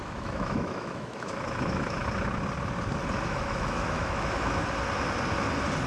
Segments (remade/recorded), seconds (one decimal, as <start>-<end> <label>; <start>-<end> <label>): 0.0-2.0 remade; 2.0-3.2 recorded; 3.2-4.6 remade; 4.6-5.9 recorded